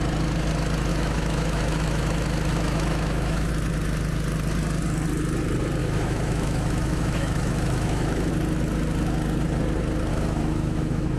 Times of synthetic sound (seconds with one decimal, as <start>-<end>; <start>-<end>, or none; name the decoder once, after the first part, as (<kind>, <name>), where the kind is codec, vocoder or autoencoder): 0.9-3.5 (autoencoder, DAC-VAE); 5.8-8.3; 10.1-11.2